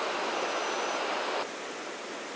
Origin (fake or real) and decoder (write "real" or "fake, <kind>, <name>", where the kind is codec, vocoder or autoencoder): real